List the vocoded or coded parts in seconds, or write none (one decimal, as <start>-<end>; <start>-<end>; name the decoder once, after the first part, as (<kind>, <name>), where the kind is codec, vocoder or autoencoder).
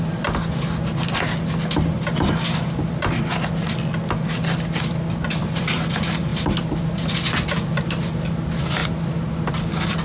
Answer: none